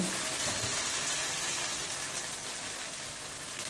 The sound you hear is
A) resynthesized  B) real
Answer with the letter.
B